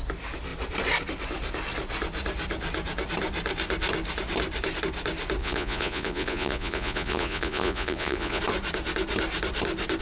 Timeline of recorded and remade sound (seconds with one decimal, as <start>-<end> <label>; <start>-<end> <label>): 0.0-5.4 recorded; 5.4-8.4 remade; 8.4-10.0 recorded